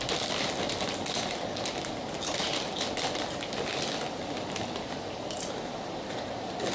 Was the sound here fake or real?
real